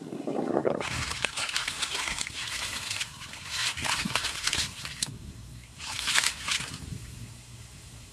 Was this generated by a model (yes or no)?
yes